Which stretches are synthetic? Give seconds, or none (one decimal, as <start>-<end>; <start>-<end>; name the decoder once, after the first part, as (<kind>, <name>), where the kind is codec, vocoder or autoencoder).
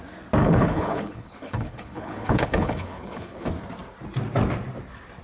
0.4-3.5 (codec, HILCodec)